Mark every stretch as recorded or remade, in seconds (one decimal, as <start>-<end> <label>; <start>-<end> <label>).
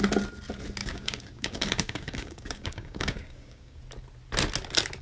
0.0-0.8 recorded; 0.8-3.8 remade; 3.8-5.0 recorded